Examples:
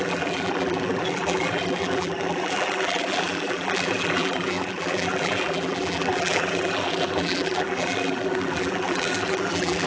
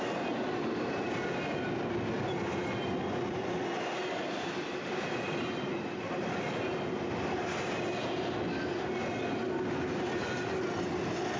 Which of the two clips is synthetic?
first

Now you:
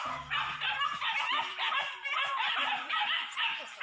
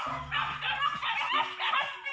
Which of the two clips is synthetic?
first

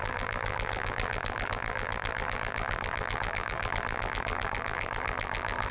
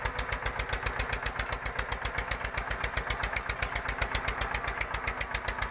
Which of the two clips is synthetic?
first